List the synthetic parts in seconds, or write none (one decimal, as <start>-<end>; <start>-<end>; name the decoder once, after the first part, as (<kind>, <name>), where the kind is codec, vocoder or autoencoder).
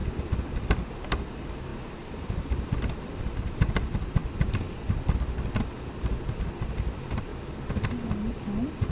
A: 1.1-7.3 (vocoder, BigVGAN v2)